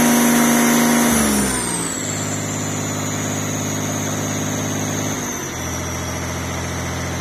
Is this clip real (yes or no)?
yes